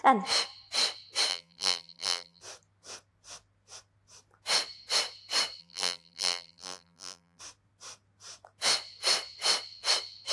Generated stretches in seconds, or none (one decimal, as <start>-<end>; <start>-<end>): 1.3-2.4; 5.6-7.4